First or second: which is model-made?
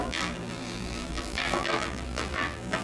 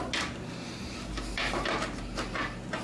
first